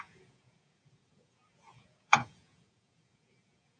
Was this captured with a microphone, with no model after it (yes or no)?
no